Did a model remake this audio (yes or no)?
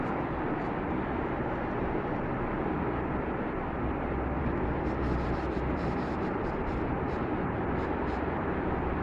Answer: yes